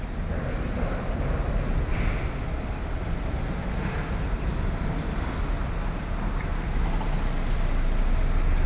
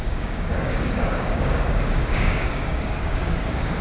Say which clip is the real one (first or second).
first